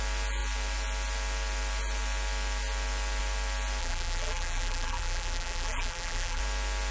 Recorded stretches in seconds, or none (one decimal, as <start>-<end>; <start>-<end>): 0.0-3.8; 6.4-6.9

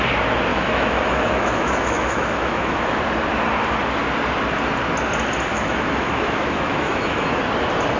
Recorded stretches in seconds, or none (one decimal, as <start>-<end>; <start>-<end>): 0.0-0.5; 3.0-5.5; 7.4-8.0

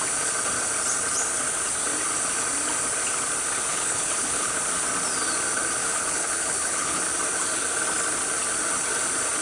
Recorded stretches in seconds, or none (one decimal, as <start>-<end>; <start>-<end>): 0.0-3.7; 4.6-5.8; 7.0-9.4